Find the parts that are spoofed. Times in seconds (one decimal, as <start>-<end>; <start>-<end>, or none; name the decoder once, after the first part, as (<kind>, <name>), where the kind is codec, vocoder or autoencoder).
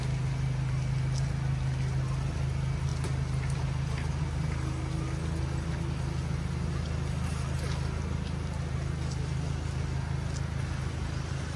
none